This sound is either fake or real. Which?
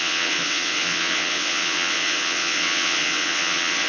fake